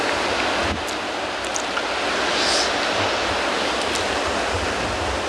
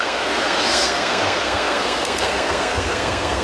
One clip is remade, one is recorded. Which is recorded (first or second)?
first